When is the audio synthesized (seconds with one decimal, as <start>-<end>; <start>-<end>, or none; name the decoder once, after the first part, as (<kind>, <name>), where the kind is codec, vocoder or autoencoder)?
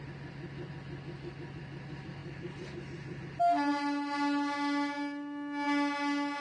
2.2-3.2 (vocoder, BigVGAN v2)